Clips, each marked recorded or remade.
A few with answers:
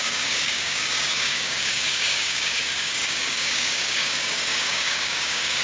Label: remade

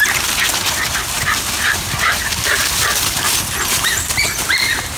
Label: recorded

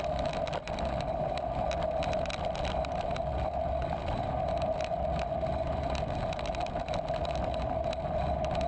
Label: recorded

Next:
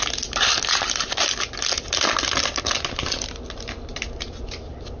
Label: recorded